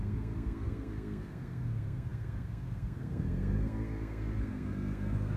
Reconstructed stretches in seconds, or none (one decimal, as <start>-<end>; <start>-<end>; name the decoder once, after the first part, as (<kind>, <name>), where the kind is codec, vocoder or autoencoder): 0.0-5.4 (codec, SNAC)